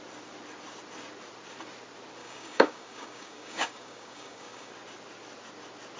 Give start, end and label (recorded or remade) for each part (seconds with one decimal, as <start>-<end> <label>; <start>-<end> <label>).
0.0-2.2 recorded; 2.2-4.7 remade; 4.7-6.0 recorded